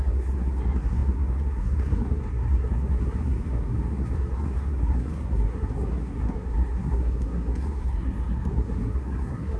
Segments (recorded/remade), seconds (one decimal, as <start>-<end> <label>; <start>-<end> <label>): 0.0-9.6 remade